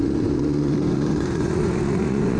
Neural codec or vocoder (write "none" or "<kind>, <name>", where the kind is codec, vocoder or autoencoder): vocoder, Vocos